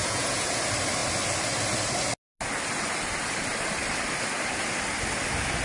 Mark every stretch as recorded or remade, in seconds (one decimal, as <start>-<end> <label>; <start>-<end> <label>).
0.0-0.6 remade; 0.6-5.6 recorded